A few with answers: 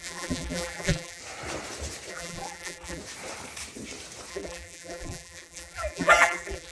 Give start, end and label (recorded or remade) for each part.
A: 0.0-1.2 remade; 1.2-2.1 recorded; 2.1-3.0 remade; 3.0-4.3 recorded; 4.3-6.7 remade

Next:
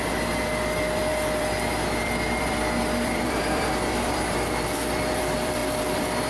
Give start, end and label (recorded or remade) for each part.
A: 0.0-6.3 remade